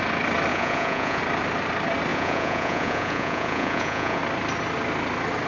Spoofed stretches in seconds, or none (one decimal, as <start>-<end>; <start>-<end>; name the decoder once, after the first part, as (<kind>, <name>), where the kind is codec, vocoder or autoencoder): 0.5-1.2 (vocoder, Vocos); 2.1-4.2